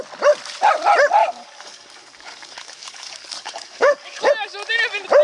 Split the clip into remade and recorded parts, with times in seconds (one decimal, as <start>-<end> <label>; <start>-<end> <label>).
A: 0.0-1.2 recorded; 1.2-4.3 remade; 4.3-5.2 recorded